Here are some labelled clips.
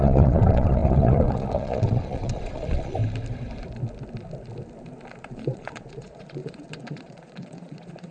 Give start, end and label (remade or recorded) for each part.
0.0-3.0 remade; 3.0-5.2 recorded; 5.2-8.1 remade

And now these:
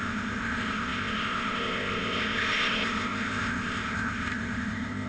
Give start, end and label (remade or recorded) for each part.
0.0-5.1 remade

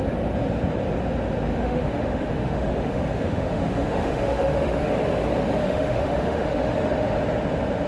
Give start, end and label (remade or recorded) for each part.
0.0-1.5 recorded; 1.5-4.9 remade; 4.9-5.6 recorded; 5.6-6.9 remade; 6.9-7.9 recorded

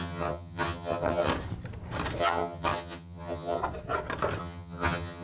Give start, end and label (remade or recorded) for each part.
0.0-1.3 remade; 1.3-2.2 recorded; 2.2-3.6 remade; 3.6-4.4 recorded; 4.4-5.2 remade